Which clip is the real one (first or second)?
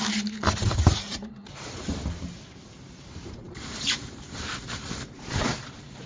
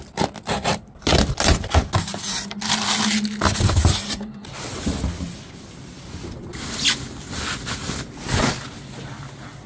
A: second